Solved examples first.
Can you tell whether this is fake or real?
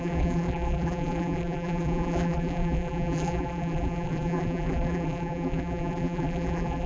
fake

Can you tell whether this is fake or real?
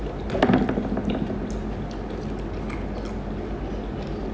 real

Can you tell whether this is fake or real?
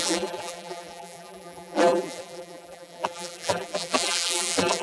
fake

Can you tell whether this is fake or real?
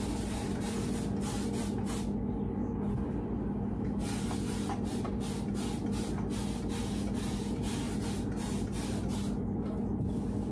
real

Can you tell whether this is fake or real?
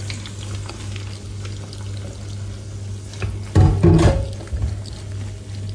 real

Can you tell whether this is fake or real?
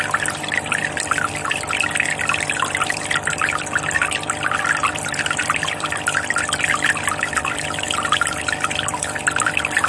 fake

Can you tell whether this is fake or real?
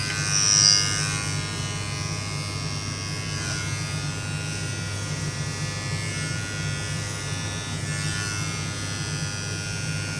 real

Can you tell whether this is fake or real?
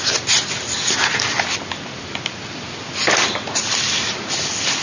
real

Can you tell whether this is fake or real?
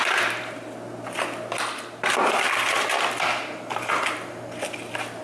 real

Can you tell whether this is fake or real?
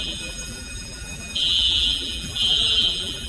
fake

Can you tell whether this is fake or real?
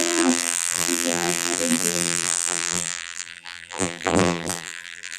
fake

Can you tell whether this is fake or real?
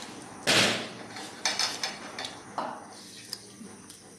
real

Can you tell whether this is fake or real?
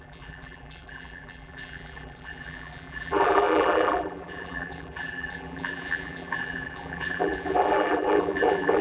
fake